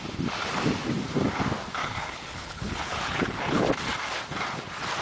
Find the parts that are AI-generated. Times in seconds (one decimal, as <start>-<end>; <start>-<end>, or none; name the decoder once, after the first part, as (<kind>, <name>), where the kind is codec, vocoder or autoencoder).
1.8-3.6 (codec, HILCodec)